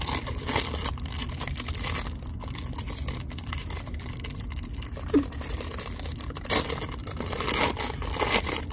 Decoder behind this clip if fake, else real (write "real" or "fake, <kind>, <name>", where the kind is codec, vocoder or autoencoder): real